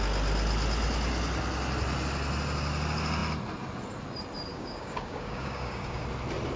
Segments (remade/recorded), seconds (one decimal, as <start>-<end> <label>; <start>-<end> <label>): 0.0-4.5 recorded; 4.5-6.0 remade; 6.0-6.6 recorded